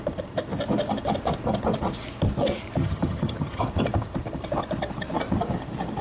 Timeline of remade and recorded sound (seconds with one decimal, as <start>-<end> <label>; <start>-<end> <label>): 0.0-2.8 recorded; 2.8-3.6 remade; 3.6-6.0 recorded